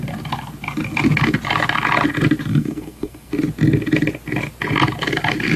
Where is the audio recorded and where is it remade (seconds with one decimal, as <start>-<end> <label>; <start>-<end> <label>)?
0.0-2.5 recorded; 2.5-3.3 remade; 3.3-5.6 recorded